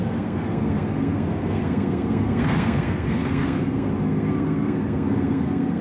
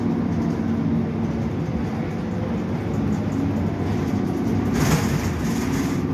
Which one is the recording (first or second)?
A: second